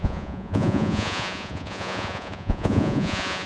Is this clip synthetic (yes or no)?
yes